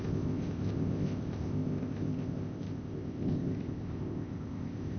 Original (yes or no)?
no